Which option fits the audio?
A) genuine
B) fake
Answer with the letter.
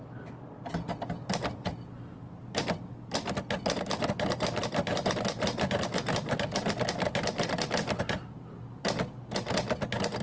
A